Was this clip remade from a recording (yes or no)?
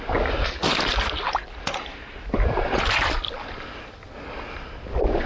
no